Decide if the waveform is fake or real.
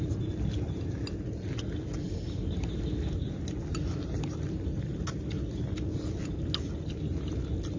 real